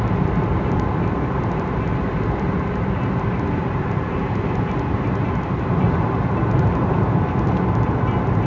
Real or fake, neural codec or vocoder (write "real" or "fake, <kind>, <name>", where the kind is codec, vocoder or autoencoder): real